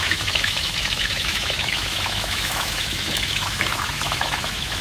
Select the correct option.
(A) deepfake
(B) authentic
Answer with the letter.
A